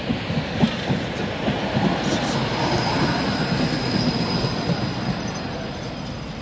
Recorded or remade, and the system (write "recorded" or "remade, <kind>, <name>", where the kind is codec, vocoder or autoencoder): recorded